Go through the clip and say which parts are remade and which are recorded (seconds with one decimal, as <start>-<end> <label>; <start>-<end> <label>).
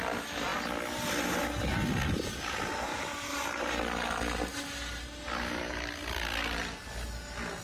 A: 0.0-2.9 recorded; 2.9-3.8 remade; 3.8-7.6 recorded